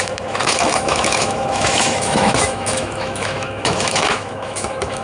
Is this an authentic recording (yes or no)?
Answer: no